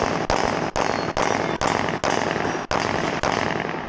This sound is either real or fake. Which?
real